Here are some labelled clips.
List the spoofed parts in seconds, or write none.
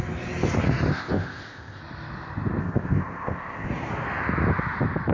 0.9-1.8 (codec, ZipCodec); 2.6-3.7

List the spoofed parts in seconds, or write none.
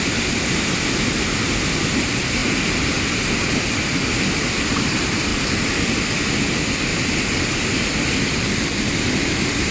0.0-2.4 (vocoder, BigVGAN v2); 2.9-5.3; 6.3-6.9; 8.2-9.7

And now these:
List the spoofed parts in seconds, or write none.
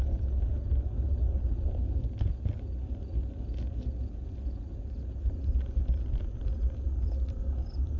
none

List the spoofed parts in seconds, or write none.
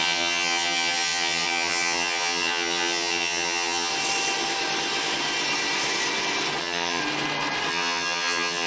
0.0-3.9 (vocoder, HiFi-GAN); 6.6-7.0; 7.7-8.7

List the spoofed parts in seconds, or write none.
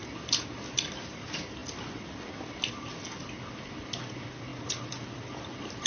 none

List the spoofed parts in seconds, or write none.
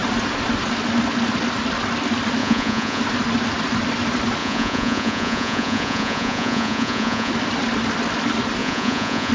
2.4-3.0 (vocoder, Vocos); 4.4-7.3; 8.6-9.3